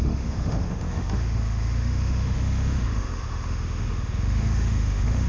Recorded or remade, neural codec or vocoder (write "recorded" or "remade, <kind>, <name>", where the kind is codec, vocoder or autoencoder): remade, autoencoder, DAC-VAE